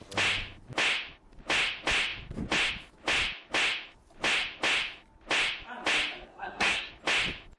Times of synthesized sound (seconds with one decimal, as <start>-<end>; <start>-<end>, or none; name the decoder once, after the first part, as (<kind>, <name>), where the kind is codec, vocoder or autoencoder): 6.3-6.9 (codec, SNAC)